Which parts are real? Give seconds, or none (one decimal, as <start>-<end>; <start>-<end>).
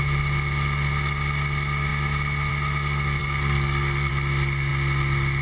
0.0-3.2; 4.1-5.4